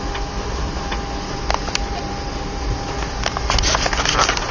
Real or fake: real